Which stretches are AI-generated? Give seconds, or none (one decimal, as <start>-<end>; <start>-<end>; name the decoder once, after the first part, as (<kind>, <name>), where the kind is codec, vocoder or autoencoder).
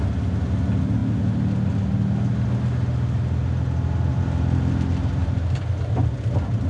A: none